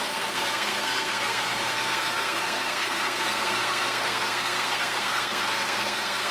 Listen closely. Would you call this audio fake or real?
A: fake